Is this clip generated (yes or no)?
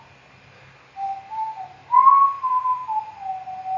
no